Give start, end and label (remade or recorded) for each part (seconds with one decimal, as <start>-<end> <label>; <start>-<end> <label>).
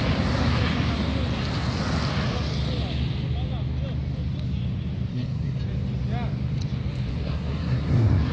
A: 0.0-5.1 recorded; 5.1-5.6 remade; 5.6-7.1 recorded; 7.1-8.3 remade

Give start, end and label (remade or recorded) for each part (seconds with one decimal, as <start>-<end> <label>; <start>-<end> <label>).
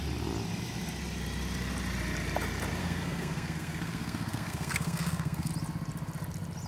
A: 0.0-2.8 recorded; 2.8-5.5 remade; 5.5-6.7 recorded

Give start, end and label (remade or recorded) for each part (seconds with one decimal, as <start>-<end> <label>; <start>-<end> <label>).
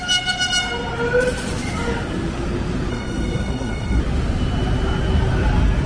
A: 0.0-2.9 recorded; 2.9-4.0 remade; 4.0-5.9 recorded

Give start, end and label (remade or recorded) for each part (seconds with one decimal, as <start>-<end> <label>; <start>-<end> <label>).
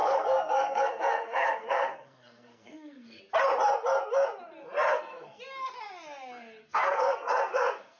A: 0.0-3.2 remade; 3.2-4.9 recorded; 4.9-5.4 remade; 5.4-6.6 recorded; 6.6-8.0 remade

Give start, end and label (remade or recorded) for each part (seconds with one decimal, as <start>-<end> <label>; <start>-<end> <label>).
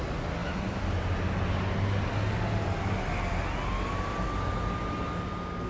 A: 0.0-5.7 recorded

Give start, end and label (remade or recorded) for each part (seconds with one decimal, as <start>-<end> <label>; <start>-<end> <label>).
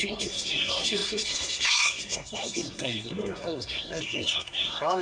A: 0.0-5.0 remade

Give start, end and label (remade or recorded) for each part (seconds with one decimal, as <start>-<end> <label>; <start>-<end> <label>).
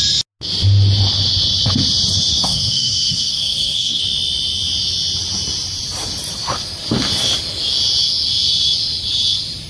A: 0.0-2.3 recorded; 2.3-4.0 remade; 4.0-9.7 recorded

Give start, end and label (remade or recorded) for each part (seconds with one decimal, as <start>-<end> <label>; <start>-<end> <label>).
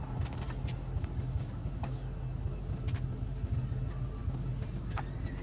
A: 0.0-5.4 recorded